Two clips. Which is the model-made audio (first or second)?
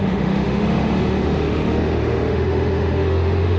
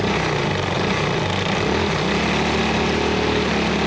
first